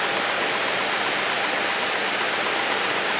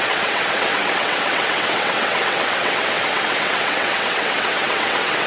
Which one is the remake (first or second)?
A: second